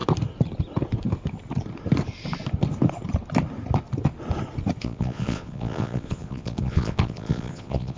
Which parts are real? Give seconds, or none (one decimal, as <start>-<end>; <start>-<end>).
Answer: 0.0-4.8